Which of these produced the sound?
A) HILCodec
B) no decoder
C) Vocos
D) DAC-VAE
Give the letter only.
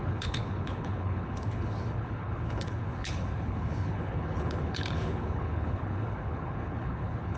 A